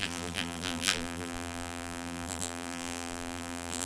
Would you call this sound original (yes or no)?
no